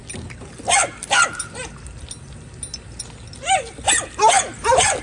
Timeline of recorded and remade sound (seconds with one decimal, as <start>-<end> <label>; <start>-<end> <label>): 0.0-5.0 recorded